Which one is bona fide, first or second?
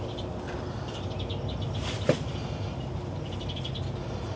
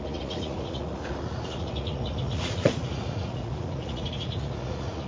first